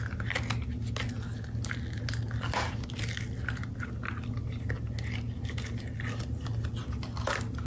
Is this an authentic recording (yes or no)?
yes